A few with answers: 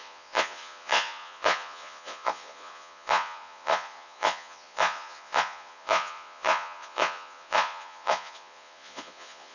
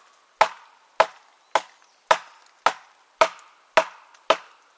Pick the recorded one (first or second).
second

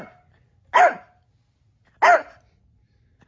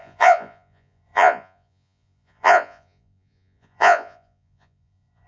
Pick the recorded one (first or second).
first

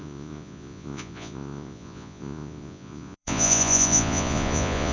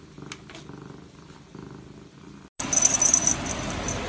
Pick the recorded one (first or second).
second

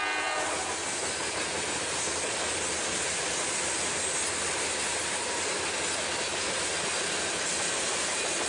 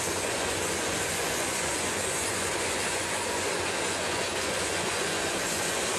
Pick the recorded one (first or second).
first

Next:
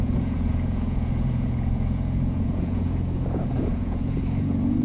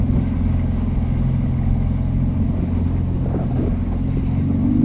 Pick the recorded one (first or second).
second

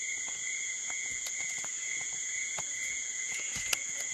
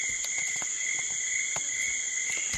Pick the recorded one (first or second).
second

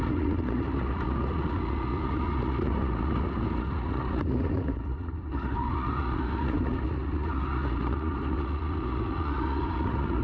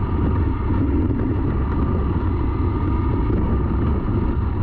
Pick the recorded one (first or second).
second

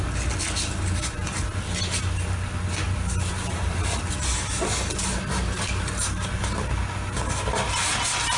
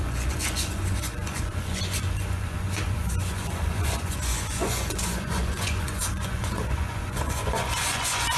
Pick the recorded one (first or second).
first